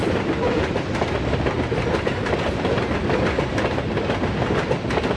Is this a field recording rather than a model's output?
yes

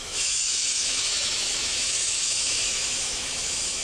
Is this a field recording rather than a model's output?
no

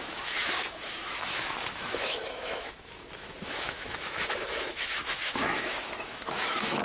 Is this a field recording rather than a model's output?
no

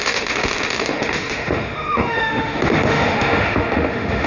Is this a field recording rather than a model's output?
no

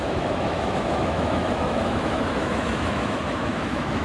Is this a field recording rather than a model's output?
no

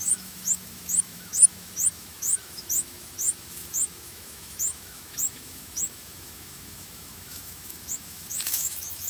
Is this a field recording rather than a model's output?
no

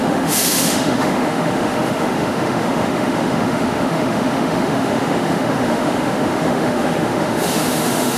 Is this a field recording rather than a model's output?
no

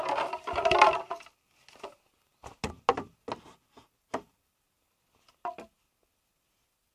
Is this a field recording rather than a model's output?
yes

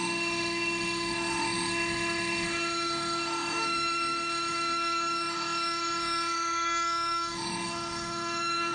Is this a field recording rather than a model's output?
no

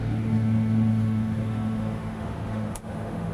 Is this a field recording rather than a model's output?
no